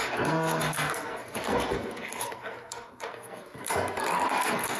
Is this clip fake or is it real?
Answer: fake